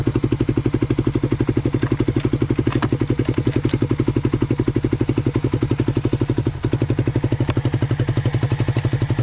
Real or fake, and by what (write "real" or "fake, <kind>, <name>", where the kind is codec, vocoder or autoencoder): real